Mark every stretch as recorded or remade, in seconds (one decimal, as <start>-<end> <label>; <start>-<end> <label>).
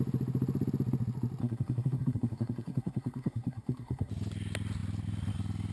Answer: 0.0-1.4 recorded; 1.4-4.1 remade; 4.1-5.7 recorded